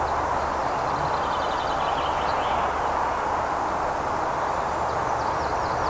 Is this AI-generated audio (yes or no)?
no